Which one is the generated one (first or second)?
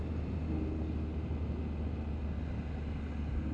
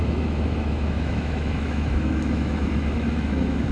second